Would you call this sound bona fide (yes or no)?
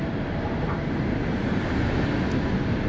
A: yes